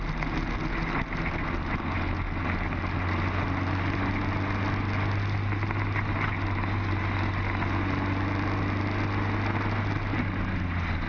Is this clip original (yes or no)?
yes